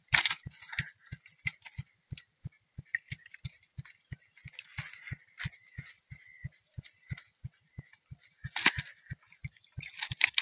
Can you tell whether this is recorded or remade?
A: recorded